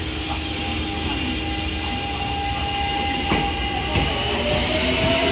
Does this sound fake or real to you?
real